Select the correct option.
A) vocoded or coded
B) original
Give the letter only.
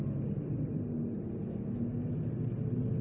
B